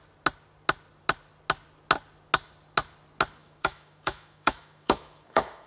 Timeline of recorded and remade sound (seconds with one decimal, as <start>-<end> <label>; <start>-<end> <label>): 0.0-3.4 recorded; 3.4-5.7 remade